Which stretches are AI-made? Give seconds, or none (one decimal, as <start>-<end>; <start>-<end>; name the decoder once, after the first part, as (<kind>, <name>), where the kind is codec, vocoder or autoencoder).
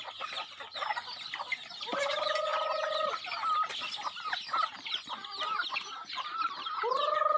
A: 6.0-7.4 (vocoder, BigVGAN v2)